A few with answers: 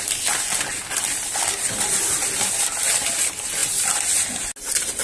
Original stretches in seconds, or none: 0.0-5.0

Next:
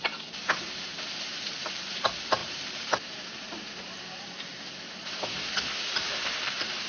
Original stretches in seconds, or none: 0.4-1.1; 4.5-5.8

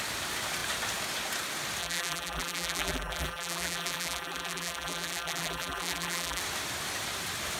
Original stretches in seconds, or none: 0.0-1.8; 6.4-7.6

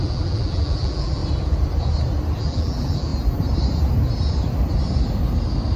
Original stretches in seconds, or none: 1.2-2.4; 3.1-5.8

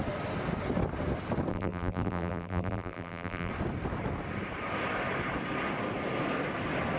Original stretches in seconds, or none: 0.0-1.5; 3.5-7.0